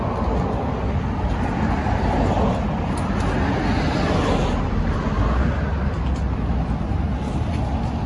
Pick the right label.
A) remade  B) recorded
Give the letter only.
B